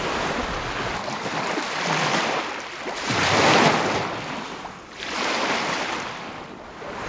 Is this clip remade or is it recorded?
recorded